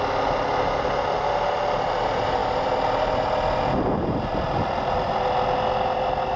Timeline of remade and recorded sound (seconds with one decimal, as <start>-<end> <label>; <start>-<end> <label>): 0.0-6.4 recorded